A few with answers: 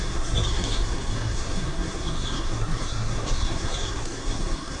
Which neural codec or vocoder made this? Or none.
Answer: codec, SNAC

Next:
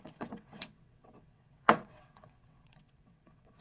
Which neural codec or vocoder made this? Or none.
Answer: vocoder, WaveNeXt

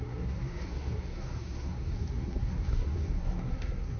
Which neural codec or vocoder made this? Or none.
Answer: codec, SNAC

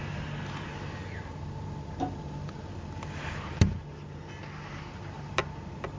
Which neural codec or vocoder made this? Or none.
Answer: none